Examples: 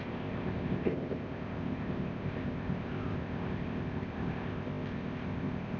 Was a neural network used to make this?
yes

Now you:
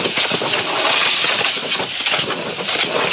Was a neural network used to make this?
no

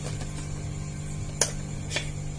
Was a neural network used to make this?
no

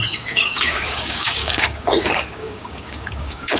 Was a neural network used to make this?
yes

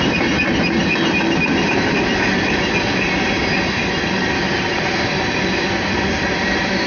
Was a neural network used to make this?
no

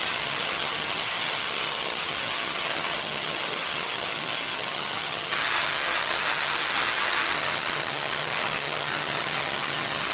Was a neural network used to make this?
yes